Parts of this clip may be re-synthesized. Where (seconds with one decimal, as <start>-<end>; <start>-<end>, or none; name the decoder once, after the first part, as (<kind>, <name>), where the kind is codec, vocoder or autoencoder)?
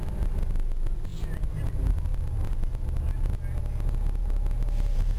4.2-5.2 (vocoder, BigVGAN v2)